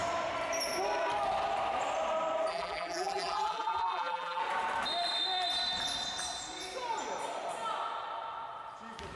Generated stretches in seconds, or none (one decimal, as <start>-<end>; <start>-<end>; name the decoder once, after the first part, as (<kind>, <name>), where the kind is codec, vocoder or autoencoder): 2.5-4.4 (vocoder, BigVGAN v2)